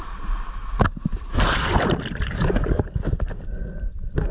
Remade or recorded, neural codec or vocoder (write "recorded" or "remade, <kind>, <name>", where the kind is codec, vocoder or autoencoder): recorded